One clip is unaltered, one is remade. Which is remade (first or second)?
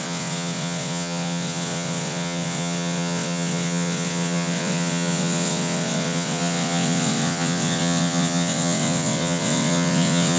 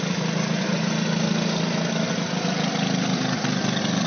first